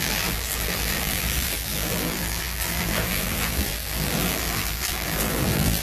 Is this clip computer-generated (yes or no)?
yes